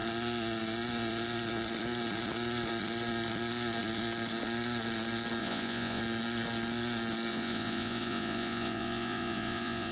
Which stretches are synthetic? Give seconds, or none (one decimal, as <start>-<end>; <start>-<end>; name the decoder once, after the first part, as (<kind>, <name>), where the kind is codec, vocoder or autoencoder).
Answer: 5.4-6.0 (vocoder, Vocos); 7.3-9.9